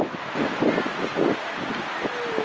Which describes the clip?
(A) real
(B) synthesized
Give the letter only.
A